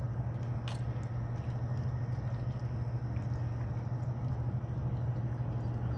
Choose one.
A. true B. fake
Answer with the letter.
A